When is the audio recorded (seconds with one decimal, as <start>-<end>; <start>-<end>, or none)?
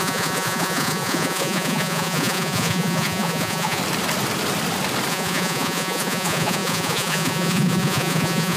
3.8-5.1